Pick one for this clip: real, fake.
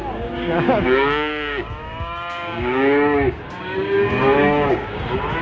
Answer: fake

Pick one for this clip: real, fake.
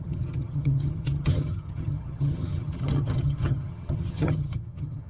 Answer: fake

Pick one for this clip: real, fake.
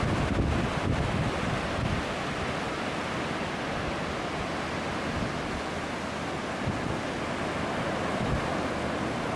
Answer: real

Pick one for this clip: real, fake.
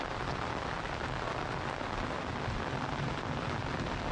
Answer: real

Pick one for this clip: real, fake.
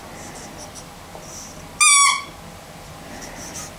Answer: real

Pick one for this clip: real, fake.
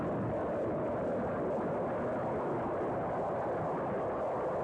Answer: real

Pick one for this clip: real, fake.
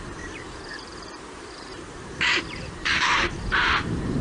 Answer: fake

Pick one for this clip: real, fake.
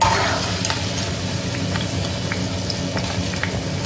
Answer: real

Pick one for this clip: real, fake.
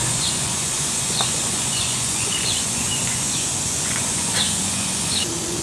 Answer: fake